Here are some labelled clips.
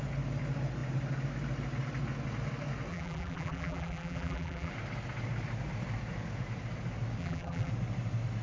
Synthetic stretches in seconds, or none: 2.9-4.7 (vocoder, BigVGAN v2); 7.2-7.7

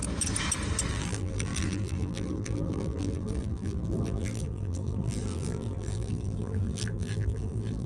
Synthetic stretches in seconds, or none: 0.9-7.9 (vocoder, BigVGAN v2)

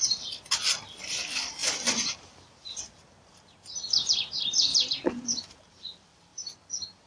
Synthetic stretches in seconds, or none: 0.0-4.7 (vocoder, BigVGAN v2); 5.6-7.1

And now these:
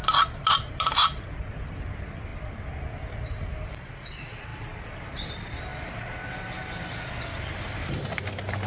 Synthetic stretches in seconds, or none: 0.0-5.7 (vocoder, BigVGAN v2); 8.1-8.7